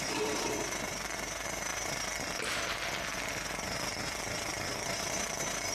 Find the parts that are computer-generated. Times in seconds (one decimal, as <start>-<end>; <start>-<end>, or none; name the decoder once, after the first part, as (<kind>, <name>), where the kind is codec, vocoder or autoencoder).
none